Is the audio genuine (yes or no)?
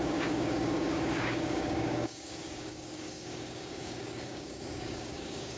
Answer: no